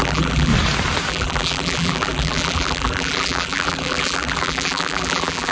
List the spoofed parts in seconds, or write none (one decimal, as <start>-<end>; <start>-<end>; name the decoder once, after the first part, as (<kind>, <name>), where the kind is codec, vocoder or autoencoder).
0.0-0.5 (vocoder, BigVGAN v2); 1.1-5.5